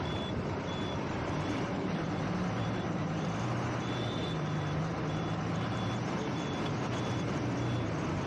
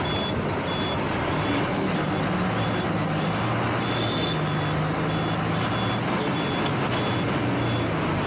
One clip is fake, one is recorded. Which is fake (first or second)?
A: first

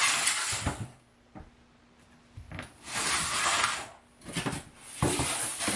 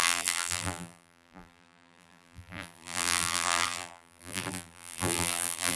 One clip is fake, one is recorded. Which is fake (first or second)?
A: second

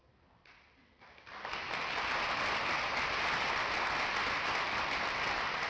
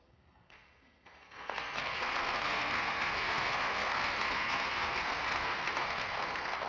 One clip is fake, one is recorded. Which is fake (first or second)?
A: second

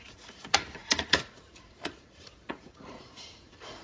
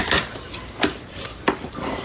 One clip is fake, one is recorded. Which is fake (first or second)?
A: first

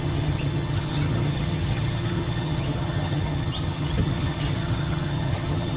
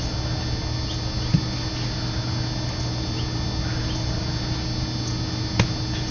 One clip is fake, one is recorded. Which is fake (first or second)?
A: first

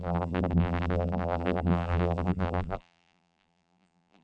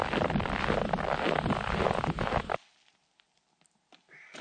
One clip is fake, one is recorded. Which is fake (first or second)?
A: first